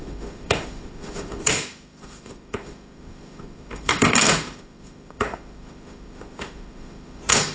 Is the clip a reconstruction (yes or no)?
yes